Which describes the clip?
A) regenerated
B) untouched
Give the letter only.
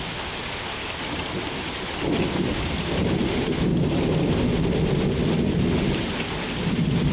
B